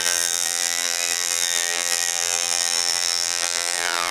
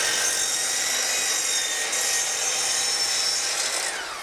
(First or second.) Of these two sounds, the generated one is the first